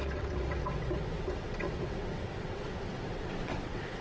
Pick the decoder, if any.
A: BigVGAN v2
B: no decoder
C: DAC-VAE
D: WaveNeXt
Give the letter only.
D